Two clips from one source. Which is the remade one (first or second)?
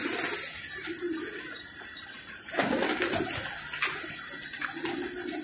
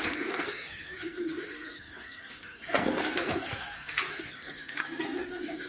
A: second